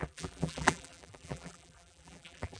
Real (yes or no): no